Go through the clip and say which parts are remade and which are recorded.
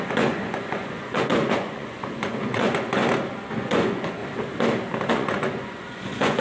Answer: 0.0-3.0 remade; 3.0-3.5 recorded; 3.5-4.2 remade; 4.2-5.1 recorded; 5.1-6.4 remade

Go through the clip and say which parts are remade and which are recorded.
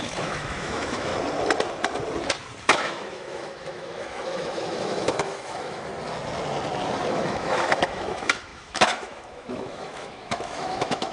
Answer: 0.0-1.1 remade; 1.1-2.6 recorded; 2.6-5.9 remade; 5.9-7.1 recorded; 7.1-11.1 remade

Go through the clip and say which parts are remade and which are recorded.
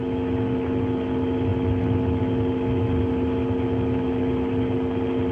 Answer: 0.0-5.3 recorded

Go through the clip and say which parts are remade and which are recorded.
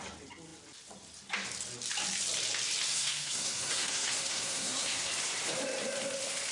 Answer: 0.0-2.9 recorded; 2.9-5.1 remade; 5.1-6.5 recorded